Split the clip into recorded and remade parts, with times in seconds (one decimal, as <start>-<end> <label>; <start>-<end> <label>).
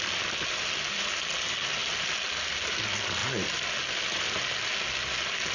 0.0-5.5 recorded